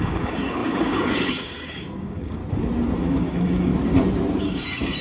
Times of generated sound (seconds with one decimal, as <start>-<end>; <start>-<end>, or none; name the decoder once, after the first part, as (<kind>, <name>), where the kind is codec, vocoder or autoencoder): 0.0-2.4 (codec, DAC); 3.0-3.7; 4.4-5.0